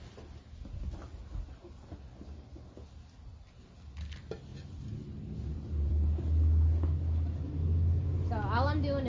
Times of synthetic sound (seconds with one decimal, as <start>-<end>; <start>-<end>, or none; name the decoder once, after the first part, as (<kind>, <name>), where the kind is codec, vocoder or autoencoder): 4.5-5.9 (vocoder, BigVGAN v2)